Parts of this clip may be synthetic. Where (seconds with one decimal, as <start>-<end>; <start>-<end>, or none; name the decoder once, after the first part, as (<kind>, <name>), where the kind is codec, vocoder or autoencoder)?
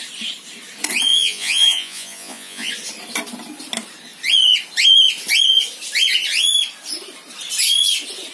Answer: 1.1-2.7 (vocoder, Vocos)